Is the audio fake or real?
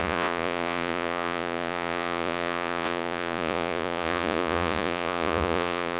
fake